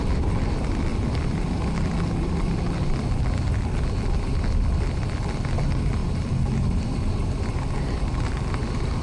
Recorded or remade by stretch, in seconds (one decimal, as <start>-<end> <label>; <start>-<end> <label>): 0.0-9.0 recorded